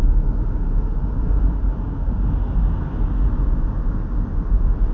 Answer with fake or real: real